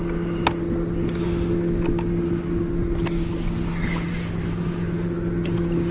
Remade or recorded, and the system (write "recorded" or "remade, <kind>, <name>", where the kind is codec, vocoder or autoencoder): recorded